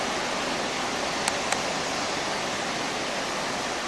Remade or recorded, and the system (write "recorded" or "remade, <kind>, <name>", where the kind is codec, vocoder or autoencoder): recorded